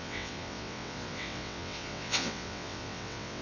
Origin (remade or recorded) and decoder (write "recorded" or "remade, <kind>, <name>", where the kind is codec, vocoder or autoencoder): remade, vocoder, WaveNeXt